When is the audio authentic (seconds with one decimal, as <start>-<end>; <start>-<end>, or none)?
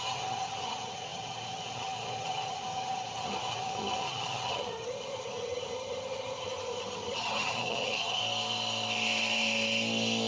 8.2-10.3